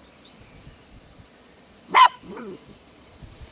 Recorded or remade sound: remade